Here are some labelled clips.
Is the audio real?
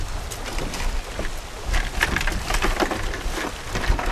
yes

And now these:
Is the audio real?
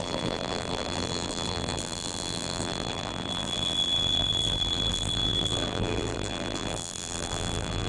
no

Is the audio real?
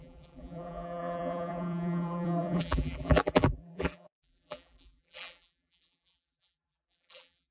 no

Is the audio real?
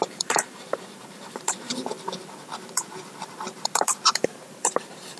no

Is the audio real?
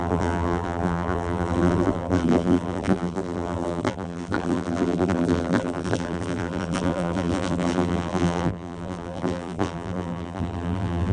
no